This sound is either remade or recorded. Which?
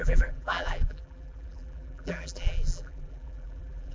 remade